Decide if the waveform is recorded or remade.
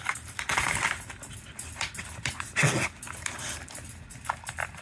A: recorded